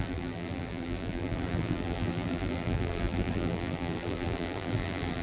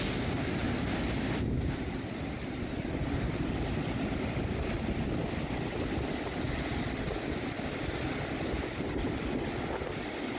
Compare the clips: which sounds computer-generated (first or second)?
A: first